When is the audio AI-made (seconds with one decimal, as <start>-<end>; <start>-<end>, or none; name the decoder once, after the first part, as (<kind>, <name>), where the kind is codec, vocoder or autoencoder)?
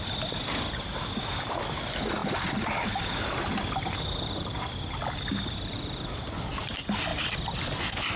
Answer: 2.2-3.3 (vocoder, BigVGAN v2); 5.7-6.5; 7.1-7.6